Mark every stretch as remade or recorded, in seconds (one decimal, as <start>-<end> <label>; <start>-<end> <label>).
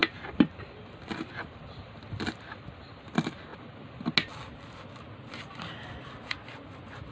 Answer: 0.0-7.1 recorded